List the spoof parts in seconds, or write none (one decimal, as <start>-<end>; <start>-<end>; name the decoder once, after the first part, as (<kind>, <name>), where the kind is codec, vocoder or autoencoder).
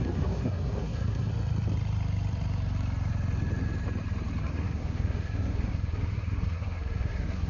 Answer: 0.0-1.3 (codec, SNAC); 4.4-7.5